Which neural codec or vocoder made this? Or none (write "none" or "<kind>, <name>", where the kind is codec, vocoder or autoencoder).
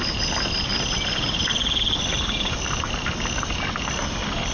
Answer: none